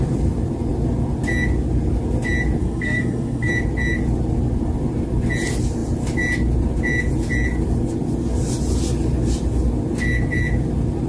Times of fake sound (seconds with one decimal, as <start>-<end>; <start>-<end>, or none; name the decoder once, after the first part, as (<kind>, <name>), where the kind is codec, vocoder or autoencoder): 2.6-3.5 (codec, SNAC)